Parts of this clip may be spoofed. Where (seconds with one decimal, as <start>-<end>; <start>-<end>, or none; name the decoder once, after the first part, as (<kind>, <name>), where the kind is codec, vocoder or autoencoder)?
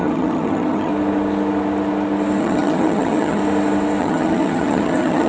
0.0-0.9 (vocoder, HiFi-GAN); 2.4-3.4; 4.0-5.3